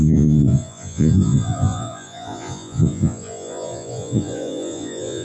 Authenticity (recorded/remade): remade